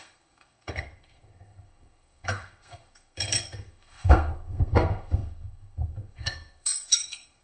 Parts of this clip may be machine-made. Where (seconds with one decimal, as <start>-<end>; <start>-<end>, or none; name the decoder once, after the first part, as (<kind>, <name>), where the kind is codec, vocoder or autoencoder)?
0.0-7.4 (codec, SNAC)